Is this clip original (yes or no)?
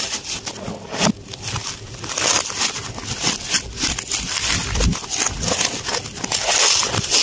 yes